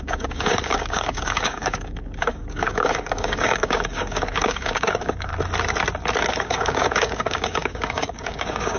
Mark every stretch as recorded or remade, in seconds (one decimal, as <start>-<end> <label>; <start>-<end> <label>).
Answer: 0.0-5.3 remade; 5.3-6.3 recorded; 6.3-8.8 remade

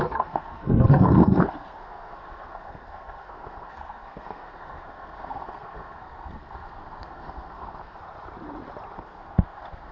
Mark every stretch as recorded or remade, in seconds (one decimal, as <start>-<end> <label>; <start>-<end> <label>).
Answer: 0.0-8.0 remade; 8.0-9.0 recorded; 9.0-9.9 remade

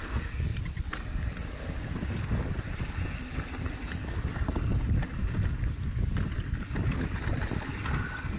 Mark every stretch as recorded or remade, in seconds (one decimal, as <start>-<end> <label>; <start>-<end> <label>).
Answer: 0.0-0.5 recorded; 0.5-2.1 remade; 2.1-8.4 recorded